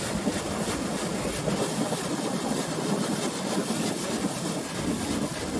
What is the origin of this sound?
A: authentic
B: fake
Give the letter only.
A